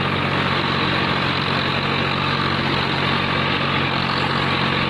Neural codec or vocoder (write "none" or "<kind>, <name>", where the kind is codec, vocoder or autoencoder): none